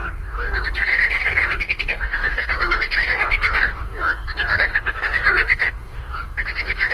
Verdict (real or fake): fake